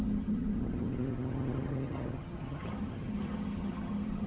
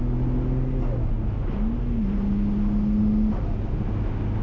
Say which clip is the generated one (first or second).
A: first